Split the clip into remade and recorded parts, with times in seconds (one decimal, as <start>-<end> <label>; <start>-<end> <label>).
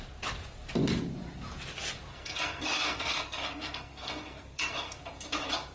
0.0-2.1 recorded; 2.1-5.0 remade; 5.0-5.7 recorded